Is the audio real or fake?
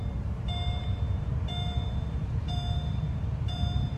fake